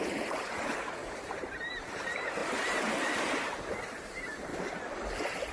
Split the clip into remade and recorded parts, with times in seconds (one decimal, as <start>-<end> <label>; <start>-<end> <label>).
0.0-4.5 remade; 4.5-5.5 recorded